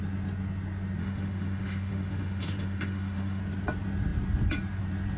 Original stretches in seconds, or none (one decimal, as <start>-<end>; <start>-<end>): 0.0-1.0; 3.4-5.2